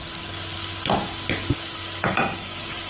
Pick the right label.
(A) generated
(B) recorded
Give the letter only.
B